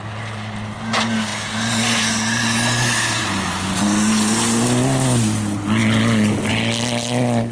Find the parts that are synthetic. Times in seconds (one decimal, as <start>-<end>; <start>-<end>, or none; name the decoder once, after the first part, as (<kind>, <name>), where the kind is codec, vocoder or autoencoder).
none